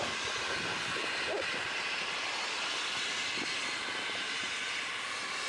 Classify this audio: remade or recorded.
recorded